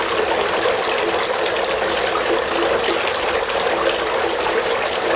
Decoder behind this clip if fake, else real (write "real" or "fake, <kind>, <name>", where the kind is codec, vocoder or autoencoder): real